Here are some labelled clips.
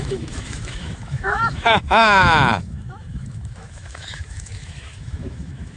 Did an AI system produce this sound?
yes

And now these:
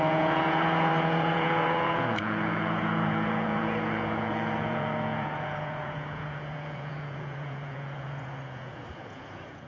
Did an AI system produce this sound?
yes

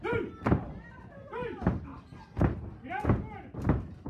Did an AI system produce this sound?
no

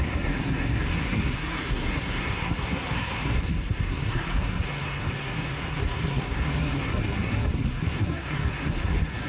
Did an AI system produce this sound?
yes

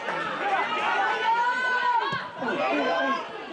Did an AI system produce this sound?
no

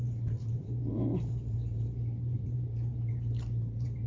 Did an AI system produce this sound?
yes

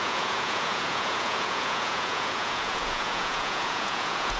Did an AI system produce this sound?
yes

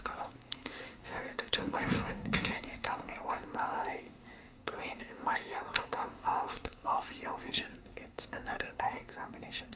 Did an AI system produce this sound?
yes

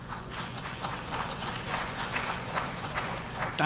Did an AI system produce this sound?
yes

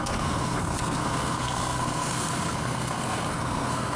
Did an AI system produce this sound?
yes